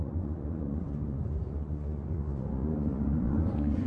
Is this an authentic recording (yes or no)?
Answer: no